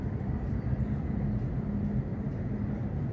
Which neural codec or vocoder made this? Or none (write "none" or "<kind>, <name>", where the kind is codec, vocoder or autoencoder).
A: vocoder, BigVGAN v2